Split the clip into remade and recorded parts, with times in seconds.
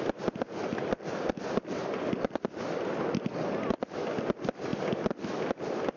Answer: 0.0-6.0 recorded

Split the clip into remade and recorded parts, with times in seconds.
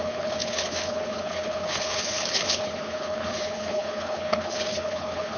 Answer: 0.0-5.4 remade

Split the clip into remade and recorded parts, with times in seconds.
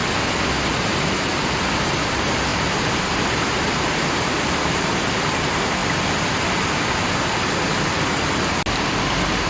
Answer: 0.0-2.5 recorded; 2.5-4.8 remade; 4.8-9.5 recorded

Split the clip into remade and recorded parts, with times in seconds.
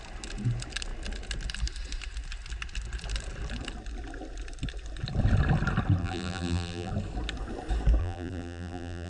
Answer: 0.0-6.0 recorded; 6.0-6.9 remade; 6.9-8.0 recorded; 8.0-9.1 remade